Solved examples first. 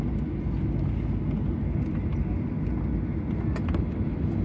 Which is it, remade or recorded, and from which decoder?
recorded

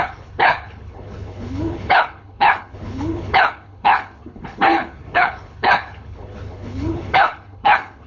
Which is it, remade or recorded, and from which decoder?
remade, codec, HILCodec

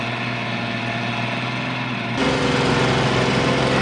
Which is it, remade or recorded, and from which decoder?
recorded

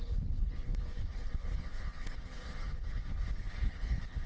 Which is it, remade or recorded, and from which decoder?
remade, codec, HILCodec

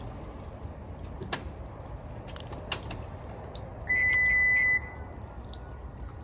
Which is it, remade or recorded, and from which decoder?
recorded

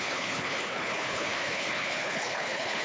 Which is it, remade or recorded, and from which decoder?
remade, codec, HILCodec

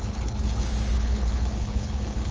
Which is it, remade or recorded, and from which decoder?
remade, codec, HILCodec